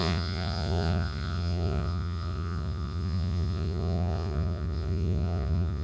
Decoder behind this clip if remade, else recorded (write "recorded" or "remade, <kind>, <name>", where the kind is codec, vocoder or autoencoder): remade, vocoder, Vocos